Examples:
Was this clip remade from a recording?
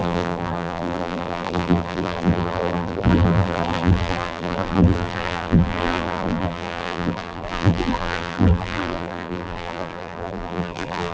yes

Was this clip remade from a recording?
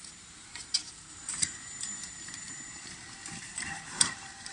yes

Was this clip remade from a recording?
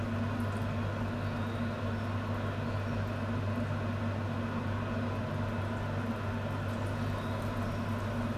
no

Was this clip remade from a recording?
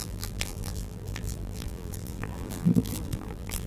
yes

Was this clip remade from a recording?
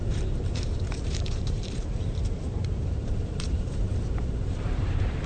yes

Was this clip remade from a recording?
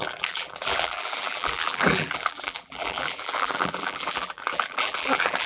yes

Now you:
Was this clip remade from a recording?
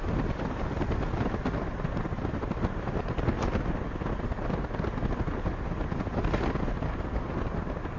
no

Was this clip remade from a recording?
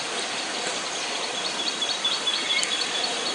yes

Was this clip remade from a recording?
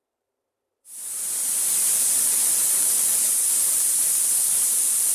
yes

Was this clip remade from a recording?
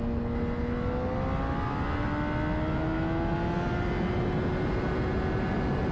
no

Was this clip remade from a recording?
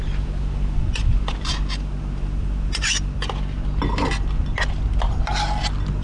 no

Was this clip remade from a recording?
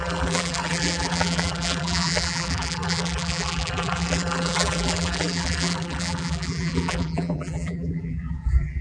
yes